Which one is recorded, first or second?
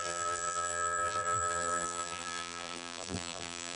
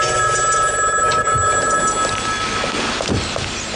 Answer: second